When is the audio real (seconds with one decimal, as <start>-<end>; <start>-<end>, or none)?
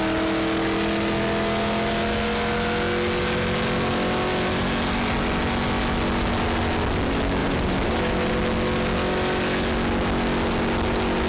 0.0-7.4; 7.9-11.3